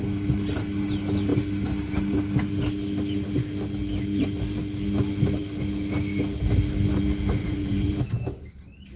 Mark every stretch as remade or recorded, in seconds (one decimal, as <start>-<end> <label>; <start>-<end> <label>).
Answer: 0.0-7.4 recorded; 7.4-8.0 remade; 8.0-9.0 recorded